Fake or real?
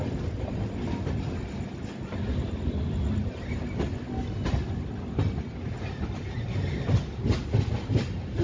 real